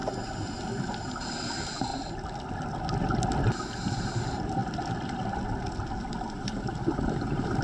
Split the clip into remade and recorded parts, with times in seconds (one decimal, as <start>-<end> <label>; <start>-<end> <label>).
0.0-0.8 recorded; 0.8-1.9 remade; 1.9-3.9 recorded; 3.9-4.6 remade; 4.6-6.2 recorded; 6.2-7.6 remade